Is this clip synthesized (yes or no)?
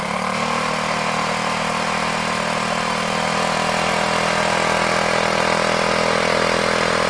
no